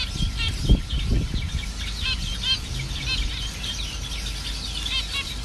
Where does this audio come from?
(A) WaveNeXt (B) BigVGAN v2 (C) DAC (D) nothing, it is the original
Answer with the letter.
D